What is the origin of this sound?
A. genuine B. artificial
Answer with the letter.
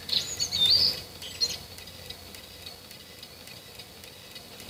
A